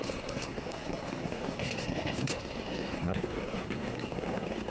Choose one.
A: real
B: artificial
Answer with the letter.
B